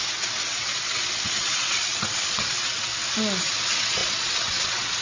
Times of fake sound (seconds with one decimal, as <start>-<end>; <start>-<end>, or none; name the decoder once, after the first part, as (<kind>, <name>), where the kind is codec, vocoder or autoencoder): 0.0-2.9 (vocoder, WaveNeXt); 3.4-5.0